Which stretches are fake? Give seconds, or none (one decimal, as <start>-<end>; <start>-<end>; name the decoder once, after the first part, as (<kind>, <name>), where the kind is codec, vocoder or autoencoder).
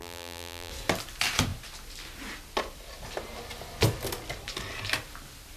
0.0-0.7 (vocoder, BigVGAN v2)